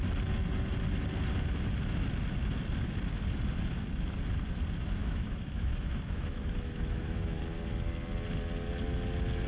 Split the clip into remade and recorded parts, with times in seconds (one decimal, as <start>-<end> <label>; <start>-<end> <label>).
0.0-5.0 recorded; 5.0-7.4 remade; 7.4-9.5 recorded